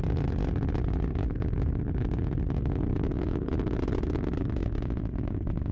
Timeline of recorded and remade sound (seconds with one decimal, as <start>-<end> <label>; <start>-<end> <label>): 0.0-1.1 recorded; 1.1-1.8 remade; 1.8-2.9 recorded; 2.9-3.5 remade; 3.5-4.6 recorded; 4.6-5.7 remade